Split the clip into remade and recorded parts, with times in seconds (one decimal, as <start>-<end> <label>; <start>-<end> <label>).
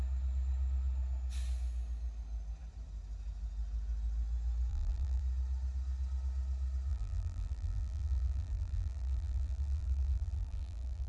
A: 0.0-4.7 recorded; 4.7-5.2 remade; 5.2-6.9 recorded; 6.9-11.1 remade